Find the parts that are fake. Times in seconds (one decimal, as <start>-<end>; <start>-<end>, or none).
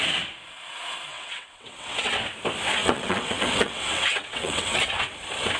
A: 1.1-2.1; 2.8-4.9